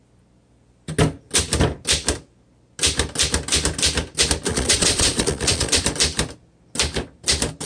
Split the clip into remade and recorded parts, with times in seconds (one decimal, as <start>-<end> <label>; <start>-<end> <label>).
0.0-4.5 recorded; 4.5-5.8 remade; 5.8-7.7 recorded